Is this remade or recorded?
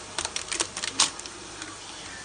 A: remade